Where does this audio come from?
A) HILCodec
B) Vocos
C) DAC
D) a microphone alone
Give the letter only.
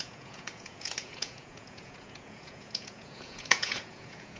B